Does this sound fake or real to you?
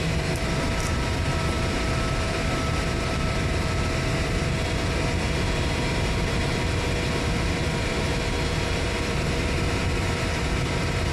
fake